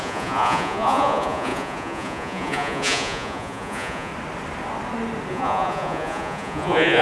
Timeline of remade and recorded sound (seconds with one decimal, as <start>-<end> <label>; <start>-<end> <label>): 0.0-4.1 remade; 4.1-5.3 recorded; 5.3-7.0 remade